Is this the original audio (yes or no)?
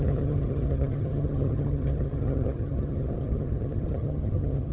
no